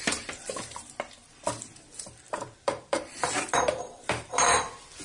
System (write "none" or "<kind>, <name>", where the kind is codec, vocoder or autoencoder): vocoder, BigVGAN v2